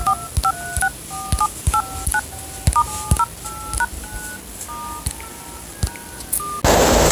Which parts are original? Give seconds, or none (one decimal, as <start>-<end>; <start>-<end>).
0.0-7.1

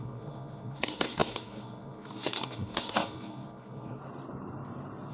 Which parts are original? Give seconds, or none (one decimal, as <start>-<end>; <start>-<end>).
4.0-5.1

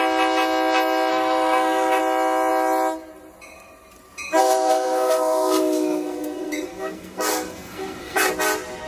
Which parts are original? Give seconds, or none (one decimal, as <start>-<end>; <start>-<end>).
0.0-1.1; 2.0-4.4; 8.3-8.9